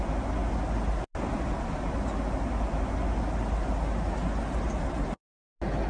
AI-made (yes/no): no